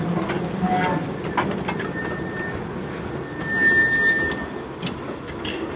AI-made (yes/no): no